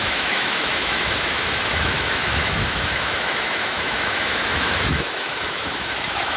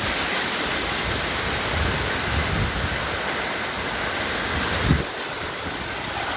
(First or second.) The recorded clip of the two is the second